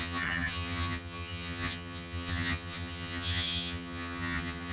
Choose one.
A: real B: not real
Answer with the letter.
B